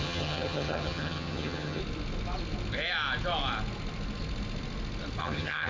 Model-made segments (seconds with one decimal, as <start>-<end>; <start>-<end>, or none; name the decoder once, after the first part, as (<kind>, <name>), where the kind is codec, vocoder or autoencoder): 0.0-1.8 (vocoder, HiFi-GAN); 5.2-5.7